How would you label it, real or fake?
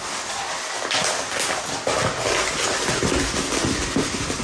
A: real